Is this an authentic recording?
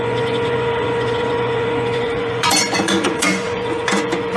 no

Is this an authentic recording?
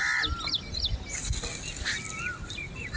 yes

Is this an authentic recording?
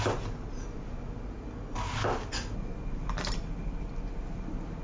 yes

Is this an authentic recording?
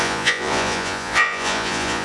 no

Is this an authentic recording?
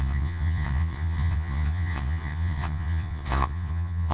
no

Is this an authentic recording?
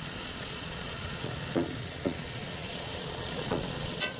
no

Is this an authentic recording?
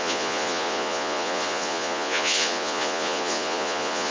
no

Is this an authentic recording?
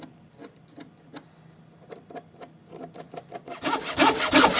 yes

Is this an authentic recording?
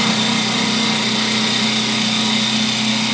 yes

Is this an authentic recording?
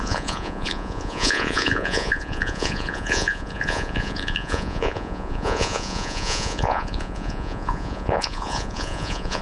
no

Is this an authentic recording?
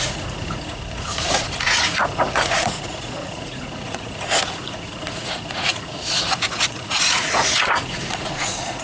no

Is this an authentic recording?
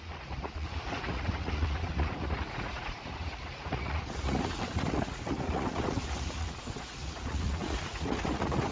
no